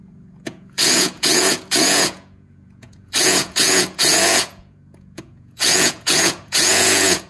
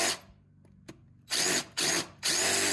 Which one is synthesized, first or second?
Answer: first